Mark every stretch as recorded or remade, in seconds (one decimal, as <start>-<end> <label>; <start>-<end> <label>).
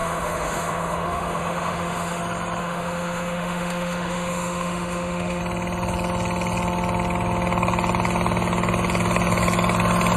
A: 0.0-2.2 remade; 2.2-2.6 recorded; 2.6-5.4 remade; 5.4-10.2 recorded